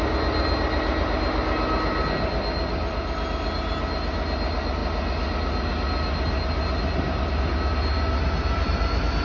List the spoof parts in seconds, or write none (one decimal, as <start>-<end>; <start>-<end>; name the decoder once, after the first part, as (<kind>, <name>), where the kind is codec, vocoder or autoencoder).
none